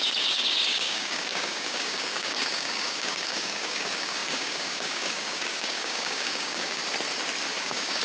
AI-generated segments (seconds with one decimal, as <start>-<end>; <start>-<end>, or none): 0.0-6.8; 7.6-8.0